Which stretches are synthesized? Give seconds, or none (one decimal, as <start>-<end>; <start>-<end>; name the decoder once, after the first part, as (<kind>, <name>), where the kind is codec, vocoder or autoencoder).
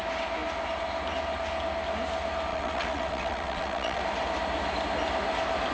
2.5-4.0 (vocoder, WaveNeXt)